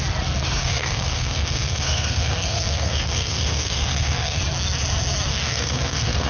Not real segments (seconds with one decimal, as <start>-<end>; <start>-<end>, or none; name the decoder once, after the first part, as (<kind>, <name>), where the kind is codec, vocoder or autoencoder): 0.6-4.4 (codec, SNAC); 5.3-6.3